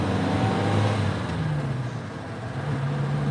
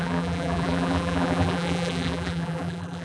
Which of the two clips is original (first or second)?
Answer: first